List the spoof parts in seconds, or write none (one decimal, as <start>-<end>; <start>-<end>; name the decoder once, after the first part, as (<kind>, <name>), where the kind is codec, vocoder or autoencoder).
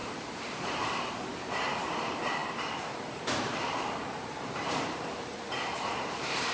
0.0-6.5 (vocoder, BigVGAN v2)